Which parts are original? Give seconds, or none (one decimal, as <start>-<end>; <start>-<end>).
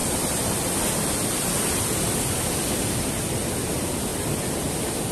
0.8-5.1